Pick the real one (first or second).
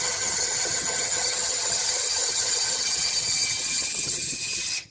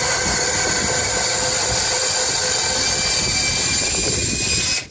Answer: second